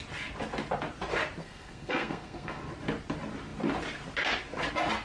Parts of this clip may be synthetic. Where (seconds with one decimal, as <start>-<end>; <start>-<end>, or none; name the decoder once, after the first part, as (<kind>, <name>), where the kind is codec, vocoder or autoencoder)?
1.4-2.7 (codec, SNAC)